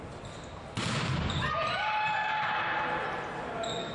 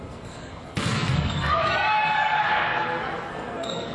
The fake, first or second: second